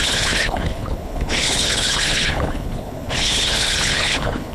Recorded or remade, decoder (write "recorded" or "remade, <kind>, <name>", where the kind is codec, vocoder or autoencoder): remade, codec, HILCodec